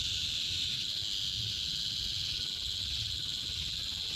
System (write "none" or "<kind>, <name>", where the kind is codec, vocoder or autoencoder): none